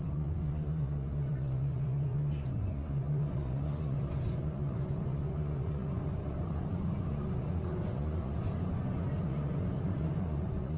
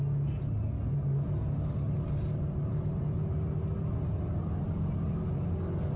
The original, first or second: second